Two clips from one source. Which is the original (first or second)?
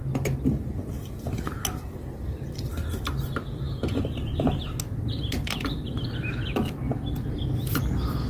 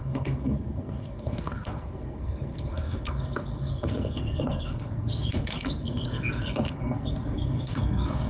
first